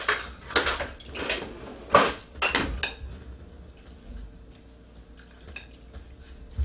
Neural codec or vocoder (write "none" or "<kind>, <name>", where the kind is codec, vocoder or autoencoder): none